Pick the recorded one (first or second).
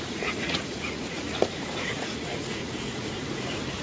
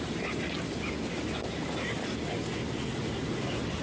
second